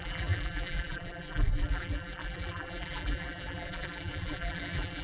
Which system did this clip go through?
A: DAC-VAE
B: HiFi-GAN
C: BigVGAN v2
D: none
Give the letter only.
C